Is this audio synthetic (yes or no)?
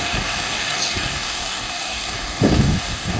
yes